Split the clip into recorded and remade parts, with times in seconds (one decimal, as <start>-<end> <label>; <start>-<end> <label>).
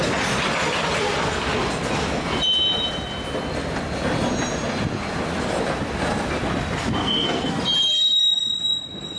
0.0-7.0 recorded; 7.0-7.6 remade; 7.6-9.2 recorded